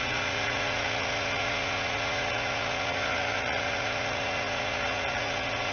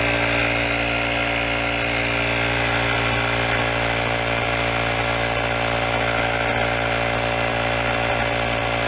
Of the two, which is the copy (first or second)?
first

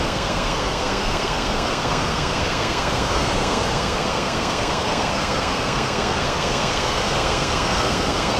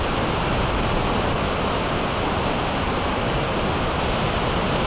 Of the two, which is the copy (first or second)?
first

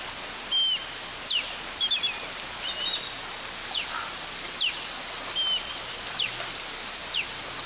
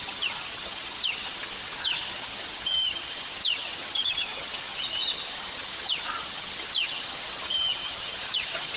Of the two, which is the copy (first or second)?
second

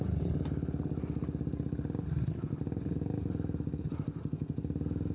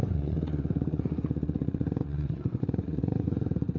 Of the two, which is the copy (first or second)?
second